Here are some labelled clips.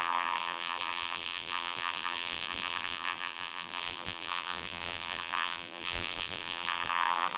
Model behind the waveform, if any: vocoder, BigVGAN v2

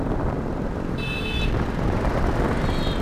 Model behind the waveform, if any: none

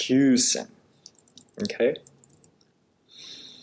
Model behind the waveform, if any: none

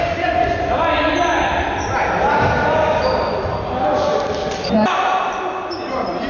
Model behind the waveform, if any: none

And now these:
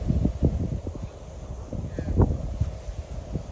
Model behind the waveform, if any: none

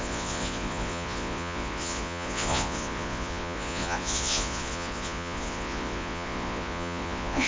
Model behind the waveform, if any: vocoder, Vocos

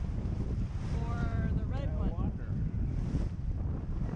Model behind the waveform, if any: vocoder, BigVGAN v2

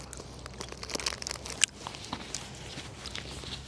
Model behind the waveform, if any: none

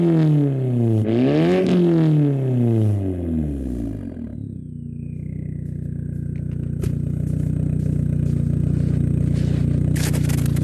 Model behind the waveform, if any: none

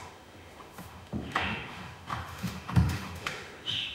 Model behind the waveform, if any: autoencoder, DAC-VAE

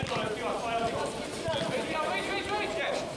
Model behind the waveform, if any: none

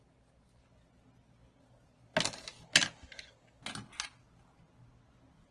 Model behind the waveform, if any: none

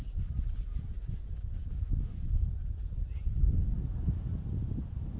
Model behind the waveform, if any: none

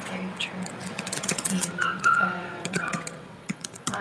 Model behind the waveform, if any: vocoder, WaveNeXt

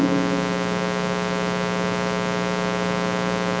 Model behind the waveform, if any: none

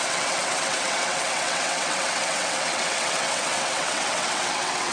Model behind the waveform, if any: vocoder, WaveNeXt